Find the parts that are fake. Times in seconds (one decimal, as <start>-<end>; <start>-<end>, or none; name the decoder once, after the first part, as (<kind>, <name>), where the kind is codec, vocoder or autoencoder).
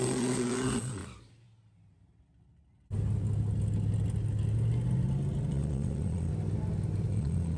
0.0-1.0 (vocoder, Vocos); 5.5-6.3; 7.1-7.6